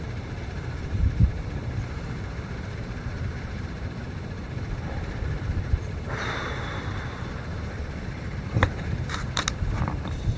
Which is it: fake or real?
fake